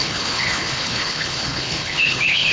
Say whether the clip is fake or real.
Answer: fake